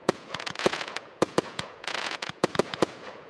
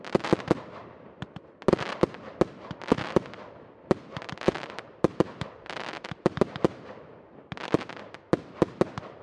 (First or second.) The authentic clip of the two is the second